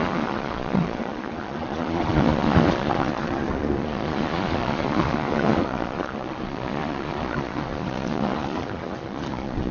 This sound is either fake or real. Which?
fake